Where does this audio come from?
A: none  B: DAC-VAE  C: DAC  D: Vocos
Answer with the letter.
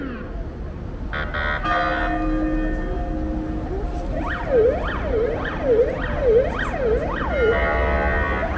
A